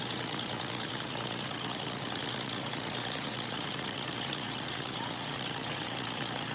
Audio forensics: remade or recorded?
remade